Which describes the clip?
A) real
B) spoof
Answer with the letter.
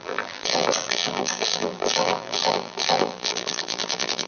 B